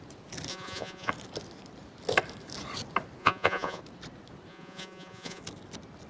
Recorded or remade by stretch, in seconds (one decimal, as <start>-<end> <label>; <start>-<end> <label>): 0.0-0.5 recorded; 0.5-1.1 remade; 1.1-3.2 recorded; 3.2-3.8 remade; 3.8-4.5 recorded; 4.5-5.4 remade; 5.4-6.1 recorded